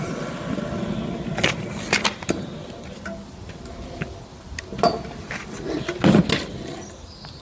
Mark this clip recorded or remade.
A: recorded